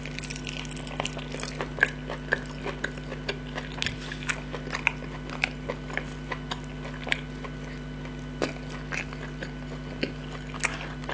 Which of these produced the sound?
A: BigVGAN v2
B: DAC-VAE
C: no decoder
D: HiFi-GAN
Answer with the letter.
C